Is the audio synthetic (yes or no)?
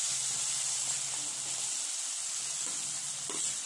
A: no